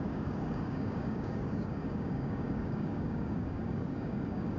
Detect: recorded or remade remade